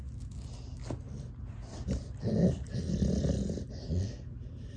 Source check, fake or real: real